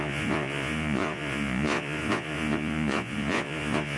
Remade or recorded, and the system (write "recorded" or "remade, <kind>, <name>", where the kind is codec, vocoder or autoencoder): remade, vocoder, Vocos